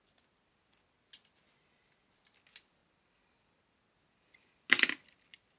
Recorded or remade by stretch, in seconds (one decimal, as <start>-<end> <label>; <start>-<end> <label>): 0.0-5.6 recorded